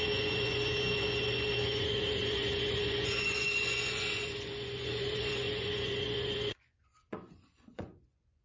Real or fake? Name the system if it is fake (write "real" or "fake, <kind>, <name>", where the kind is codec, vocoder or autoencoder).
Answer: fake, vocoder, Vocos